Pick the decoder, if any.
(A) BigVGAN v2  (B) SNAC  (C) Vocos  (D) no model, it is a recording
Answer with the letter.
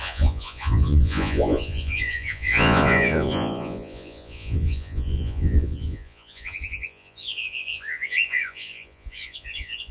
C